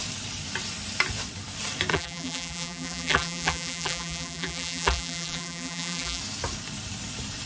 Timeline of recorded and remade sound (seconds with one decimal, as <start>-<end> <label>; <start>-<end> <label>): 0.0-1.9 recorded; 1.9-6.2 remade; 6.2-7.5 recorded